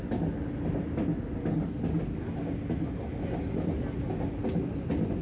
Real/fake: real